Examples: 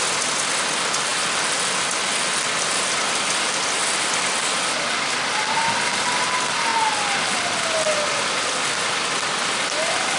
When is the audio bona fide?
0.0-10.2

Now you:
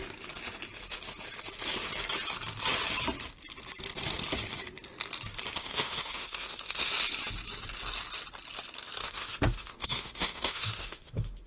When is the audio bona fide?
0.0-5.6; 6.9-9.0

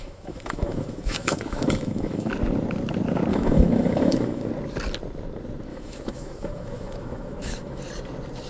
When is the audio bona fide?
2.3-3.3; 4.5-5.7; 7.8-8.5

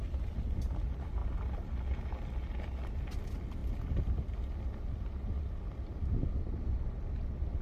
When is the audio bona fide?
0.0-7.6

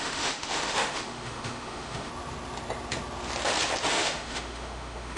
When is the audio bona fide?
2.1-3.9

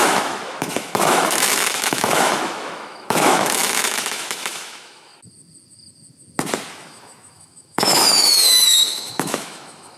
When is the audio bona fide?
5.1-6.7

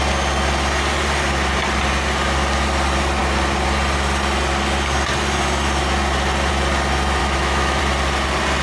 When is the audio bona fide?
0.0-7.2; 7.8-8.6